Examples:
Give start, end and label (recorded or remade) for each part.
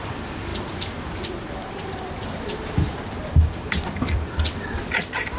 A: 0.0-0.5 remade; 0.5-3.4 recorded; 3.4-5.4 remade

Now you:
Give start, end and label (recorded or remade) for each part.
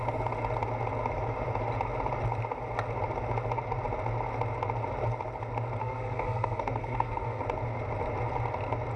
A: 0.0-5.8 recorded; 5.8-7.4 remade; 7.4-9.0 recorded